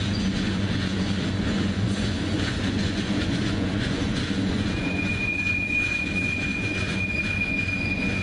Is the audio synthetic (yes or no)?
yes